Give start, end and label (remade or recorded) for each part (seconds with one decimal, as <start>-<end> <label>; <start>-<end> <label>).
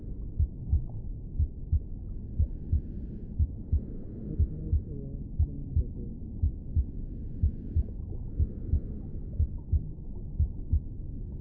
0.0-11.4 recorded